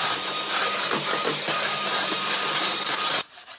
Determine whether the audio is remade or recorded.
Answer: remade